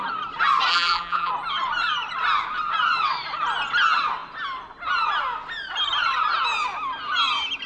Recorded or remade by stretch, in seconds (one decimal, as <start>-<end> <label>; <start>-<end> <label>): 0.0-0.7 recorded; 0.7-1.3 remade; 1.3-7.7 recorded